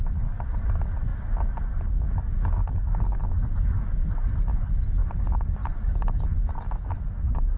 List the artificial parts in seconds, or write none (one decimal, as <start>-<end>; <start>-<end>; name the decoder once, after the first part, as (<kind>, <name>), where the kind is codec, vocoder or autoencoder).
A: 0.0-1.1 (vocoder, BigVGAN v2); 3.2-5.6